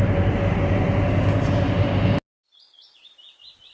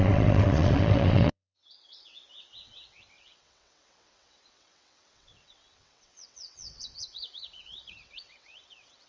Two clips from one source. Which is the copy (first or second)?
second